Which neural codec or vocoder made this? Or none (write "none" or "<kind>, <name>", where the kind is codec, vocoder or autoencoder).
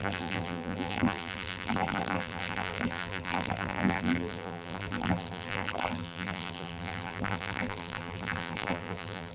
vocoder, BigVGAN v2